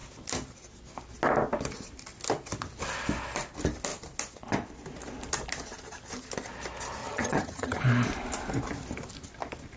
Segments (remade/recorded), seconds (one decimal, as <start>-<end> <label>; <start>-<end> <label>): 0.0-7.0 recorded; 7.0-7.8 remade; 7.8-9.8 recorded